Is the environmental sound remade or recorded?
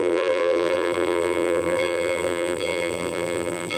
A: remade